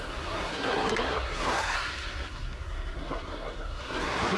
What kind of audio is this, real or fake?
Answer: fake